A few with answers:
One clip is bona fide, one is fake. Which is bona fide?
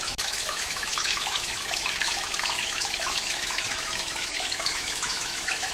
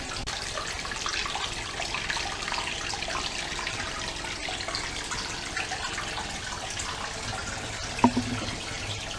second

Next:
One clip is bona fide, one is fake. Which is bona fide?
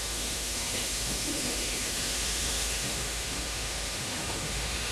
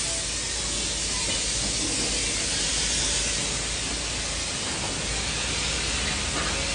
second